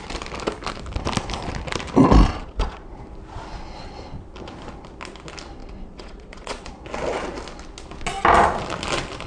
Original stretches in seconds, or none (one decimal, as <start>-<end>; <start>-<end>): 0.0-2.4; 2.9-5.6; 6.7-9.3